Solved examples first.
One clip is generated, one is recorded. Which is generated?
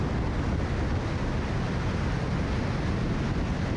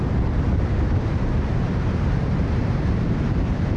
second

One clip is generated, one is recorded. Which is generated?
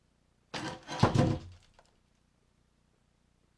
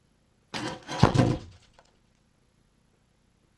second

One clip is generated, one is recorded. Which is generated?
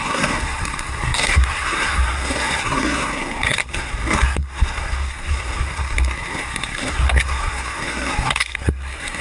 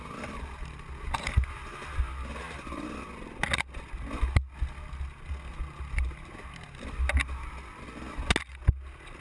first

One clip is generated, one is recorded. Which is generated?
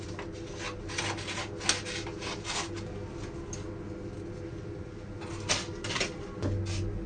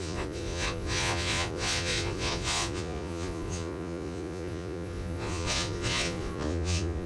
second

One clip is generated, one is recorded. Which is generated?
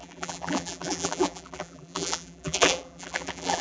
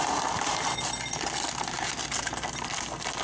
first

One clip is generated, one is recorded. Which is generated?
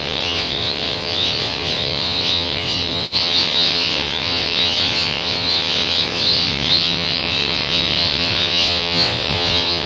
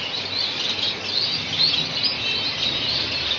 first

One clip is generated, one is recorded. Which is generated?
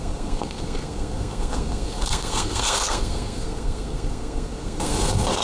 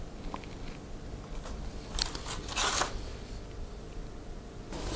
first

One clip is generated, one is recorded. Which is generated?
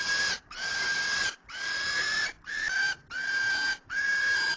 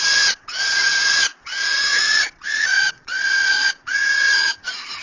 second